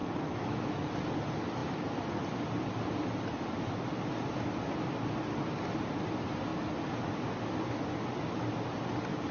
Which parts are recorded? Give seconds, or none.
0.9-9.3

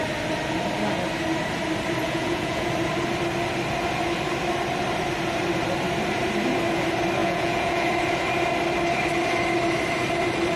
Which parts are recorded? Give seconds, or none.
0.0-2.0; 2.7-7.2; 7.9-10.6

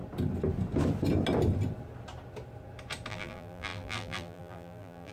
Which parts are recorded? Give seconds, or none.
0.0-3.1

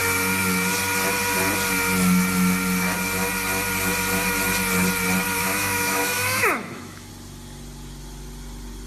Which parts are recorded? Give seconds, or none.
0.0-5.4; 7.1-8.9

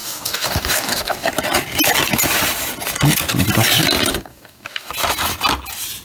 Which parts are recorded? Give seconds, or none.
1.3-4.1; 4.9-6.0

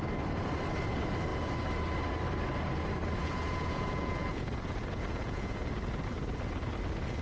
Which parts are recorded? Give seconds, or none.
0.0-3.2; 5.7-7.2

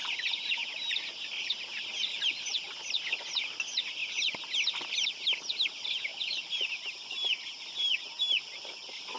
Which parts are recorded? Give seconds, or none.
0.0-9.2